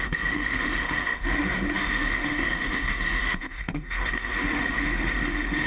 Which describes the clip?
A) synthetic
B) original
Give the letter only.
A